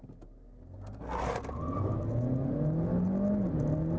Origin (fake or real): real